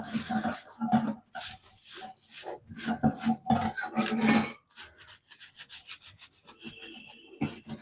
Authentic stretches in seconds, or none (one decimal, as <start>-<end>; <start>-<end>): 0.0-7.8